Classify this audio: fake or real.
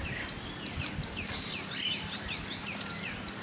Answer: real